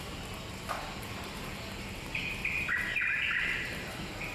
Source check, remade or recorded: recorded